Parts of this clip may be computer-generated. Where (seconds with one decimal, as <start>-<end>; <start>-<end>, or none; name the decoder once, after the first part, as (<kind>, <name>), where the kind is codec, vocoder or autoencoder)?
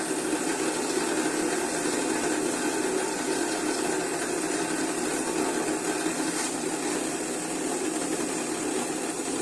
none